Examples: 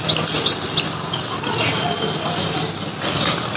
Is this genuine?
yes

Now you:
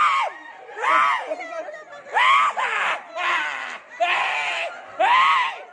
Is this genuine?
yes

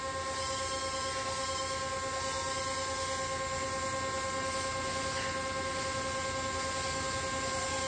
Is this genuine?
yes